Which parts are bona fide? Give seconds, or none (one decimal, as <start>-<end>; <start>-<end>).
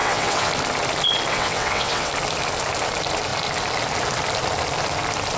0.5-1.3; 2.1-5.4